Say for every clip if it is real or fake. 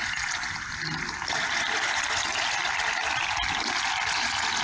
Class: real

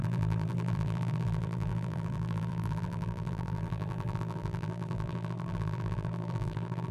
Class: fake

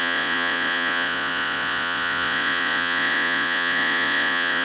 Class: fake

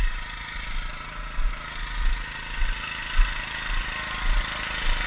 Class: real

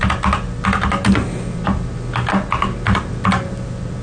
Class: real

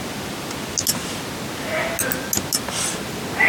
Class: real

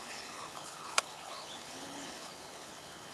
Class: fake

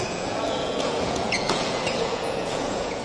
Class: fake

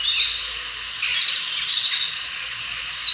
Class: real